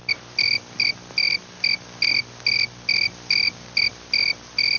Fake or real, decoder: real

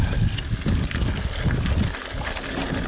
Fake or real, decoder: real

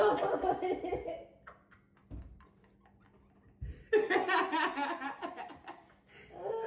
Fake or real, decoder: real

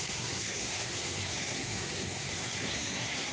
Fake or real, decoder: fake, codec, SNAC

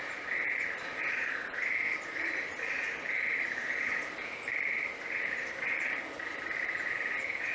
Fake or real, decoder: fake, vocoder, BigVGAN v2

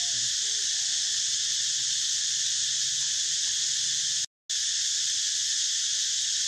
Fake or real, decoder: real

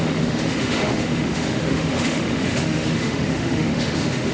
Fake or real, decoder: fake, autoencoder, DAC-VAE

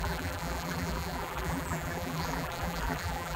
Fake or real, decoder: fake, vocoder, BigVGAN v2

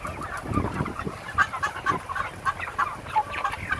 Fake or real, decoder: real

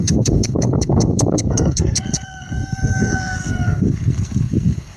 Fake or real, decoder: fake, codec, SNAC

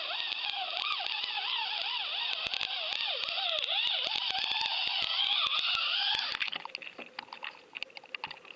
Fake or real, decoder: real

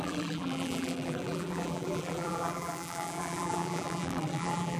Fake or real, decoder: fake, vocoder, BigVGAN v2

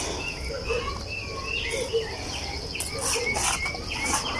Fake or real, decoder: real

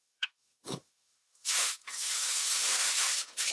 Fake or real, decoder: fake, autoencoder, DAC-VAE